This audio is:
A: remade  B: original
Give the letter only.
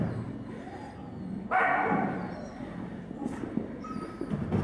B